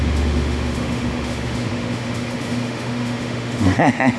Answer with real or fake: fake